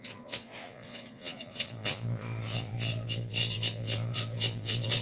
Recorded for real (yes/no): no